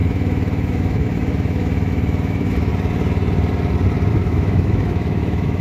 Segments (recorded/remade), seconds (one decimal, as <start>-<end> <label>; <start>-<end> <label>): 0.0-2.7 remade; 2.7-4.1 recorded; 4.1-5.6 remade